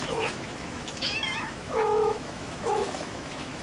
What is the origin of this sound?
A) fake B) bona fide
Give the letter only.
A